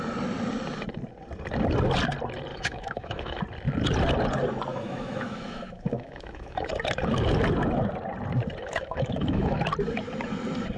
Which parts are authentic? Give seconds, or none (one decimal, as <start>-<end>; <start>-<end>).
0.0-2.5; 3.4-4.7; 6.7-8.6; 9.6-10.8